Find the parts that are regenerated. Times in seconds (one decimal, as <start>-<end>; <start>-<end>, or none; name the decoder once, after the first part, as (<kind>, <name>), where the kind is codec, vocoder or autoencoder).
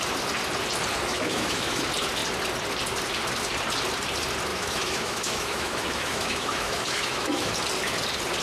1.1-1.8 (autoencoder, DAC-VAE); 4.5-7.5